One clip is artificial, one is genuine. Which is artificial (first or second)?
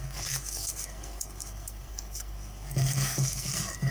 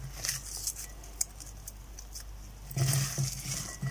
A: first